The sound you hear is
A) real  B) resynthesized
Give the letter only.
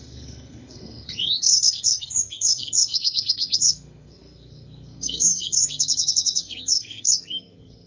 B